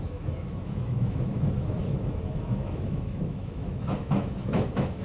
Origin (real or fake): fake